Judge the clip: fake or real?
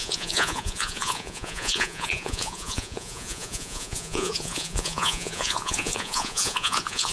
fake